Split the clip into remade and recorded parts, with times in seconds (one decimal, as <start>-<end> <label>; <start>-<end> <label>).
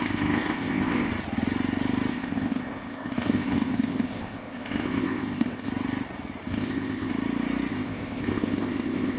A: 0.0-1.1 remade; 1.1-2.1 recorded; 2.1-5.7 remade; 5.7-6.5 recorded; 6.5-7.1 remade; 7.1-7.7 recorded; 7.7-9.2 remade